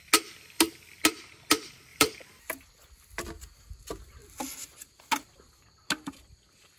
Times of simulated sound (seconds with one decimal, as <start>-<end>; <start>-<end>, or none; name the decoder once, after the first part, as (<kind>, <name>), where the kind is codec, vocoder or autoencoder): 1.9-2.4 (vocoder, BigVGAN v2)

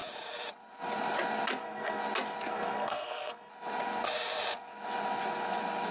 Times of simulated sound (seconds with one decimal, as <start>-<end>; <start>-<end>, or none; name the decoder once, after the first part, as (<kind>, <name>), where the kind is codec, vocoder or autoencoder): 1.6-2.0 (codec, SNAC); 2.5-3.5